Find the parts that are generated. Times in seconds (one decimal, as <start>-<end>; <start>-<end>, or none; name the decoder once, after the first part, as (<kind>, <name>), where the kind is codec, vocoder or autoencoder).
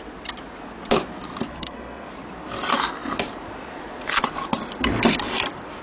1.5-2.1 (codec, SNAC)